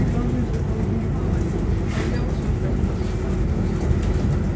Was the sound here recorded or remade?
recorded